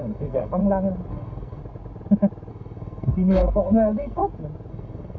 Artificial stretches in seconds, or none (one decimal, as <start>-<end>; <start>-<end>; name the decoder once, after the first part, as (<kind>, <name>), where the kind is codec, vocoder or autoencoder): 0.0-0.6 (codec, SNAC); 1.1-1.6; 2.5-4.2; 4.7-5.2